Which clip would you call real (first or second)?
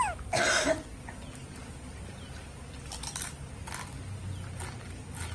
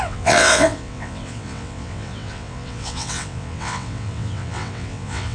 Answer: first